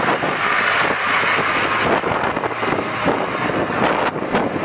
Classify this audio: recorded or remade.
recorded